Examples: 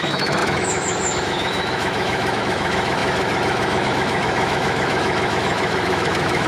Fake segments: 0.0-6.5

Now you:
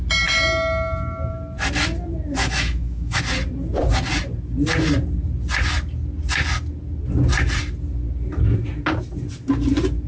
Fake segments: 2.4-3.2

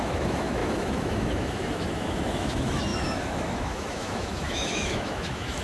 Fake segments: 0.0-5.6

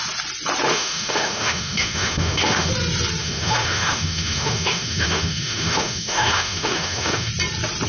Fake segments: 0.7-2.7; 3.2-7.3